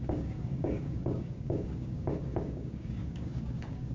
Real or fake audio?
fake